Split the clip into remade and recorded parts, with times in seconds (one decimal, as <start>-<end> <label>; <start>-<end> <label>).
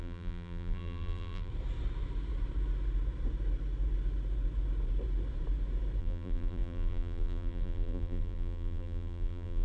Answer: 0.0-1.5 remade; 1.5-6.0 recorded; 6.0-9.6 remade